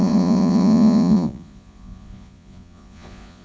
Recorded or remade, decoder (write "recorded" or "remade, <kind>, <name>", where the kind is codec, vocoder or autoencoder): remade, vocoder, Vocos